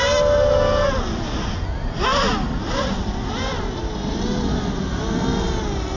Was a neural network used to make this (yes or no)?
no